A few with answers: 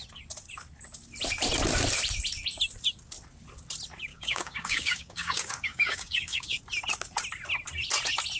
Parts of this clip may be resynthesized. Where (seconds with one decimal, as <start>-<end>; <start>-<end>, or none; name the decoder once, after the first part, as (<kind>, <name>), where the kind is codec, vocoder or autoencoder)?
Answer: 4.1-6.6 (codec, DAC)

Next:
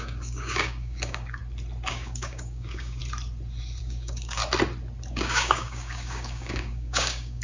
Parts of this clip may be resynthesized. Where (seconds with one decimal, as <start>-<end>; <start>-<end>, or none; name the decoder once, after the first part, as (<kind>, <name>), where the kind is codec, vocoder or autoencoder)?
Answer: 0.0-1.4 (codec, DAC); 1.9-3.0; 3.8-4.4; 5.1-7.4

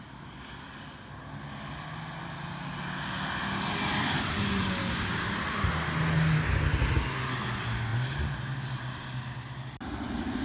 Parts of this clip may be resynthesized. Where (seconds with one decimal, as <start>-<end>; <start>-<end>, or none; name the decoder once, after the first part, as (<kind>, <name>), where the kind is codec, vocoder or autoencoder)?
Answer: 4.8-5.3 (codec, DAC)

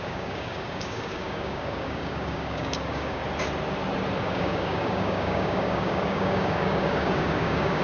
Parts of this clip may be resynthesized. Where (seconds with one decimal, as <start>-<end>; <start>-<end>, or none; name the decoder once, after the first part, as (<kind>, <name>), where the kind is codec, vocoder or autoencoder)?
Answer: 0.0-3.2 (codec, DAC); 4.2-7.8

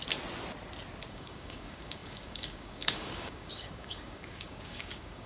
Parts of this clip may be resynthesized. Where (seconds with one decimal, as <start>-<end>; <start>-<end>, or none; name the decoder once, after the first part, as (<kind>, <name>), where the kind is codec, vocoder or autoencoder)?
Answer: 1.1-5.3 (codec, DAC)